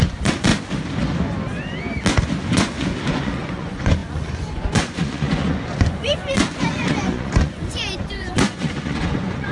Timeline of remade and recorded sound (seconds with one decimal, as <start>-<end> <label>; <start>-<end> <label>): 0.0-0.5 remade; 0.5-2.5 recorded; 2.5-9.5 remade